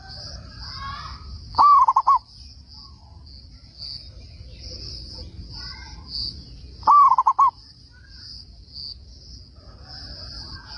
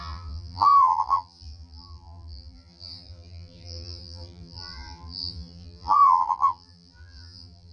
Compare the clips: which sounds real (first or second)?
first